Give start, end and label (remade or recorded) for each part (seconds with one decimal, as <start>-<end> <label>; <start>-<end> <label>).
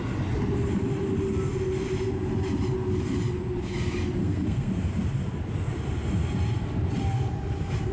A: 0.0-4.2 recorded; 4.2-4.7 remade; 4.7-7.9 recorded